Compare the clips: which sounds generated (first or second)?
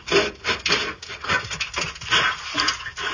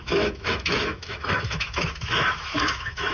second